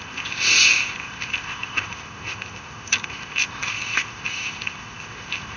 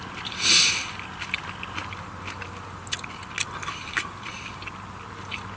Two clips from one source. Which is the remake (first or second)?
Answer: first